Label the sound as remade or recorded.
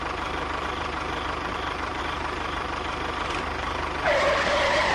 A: remade